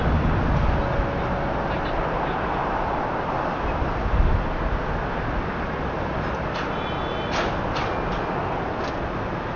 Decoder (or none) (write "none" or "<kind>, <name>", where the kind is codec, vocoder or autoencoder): none